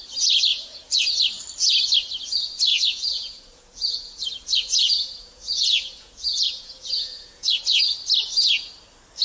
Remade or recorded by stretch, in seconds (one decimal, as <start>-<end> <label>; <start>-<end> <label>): 0.0-0.5 recorded; 0.5-1.0 remade; 1.0-2.7 recorded; 2.7-7.6 remade; 7.6-9.2 recorded